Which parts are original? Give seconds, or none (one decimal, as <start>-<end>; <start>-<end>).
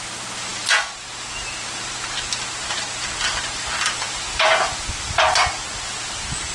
0.0-6.5